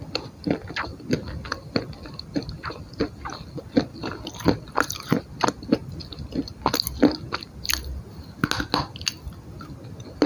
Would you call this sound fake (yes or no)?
no